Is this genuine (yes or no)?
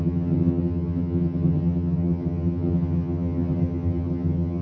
no